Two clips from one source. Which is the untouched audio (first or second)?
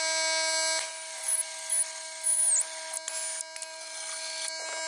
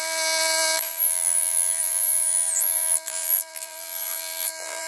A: first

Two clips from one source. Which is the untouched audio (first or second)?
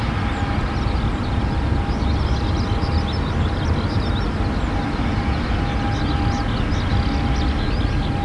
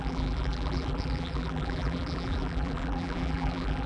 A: first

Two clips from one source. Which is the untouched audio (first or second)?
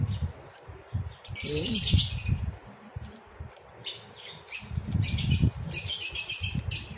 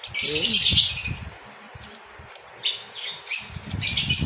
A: second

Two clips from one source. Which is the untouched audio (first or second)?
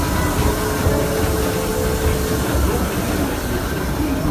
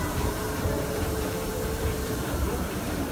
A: first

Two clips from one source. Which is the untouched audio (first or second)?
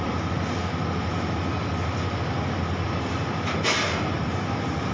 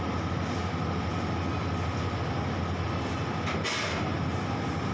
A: second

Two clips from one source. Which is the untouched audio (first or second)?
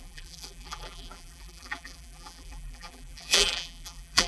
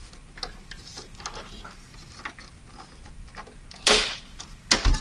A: second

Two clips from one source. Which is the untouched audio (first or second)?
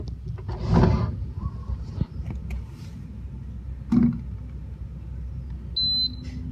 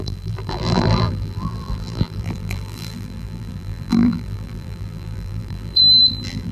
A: first